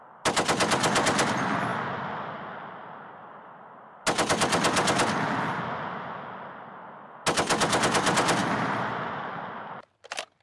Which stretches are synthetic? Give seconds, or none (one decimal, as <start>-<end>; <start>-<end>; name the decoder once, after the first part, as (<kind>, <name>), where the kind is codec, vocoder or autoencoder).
8.4-8.9 (vocoder, BigVGAN v2)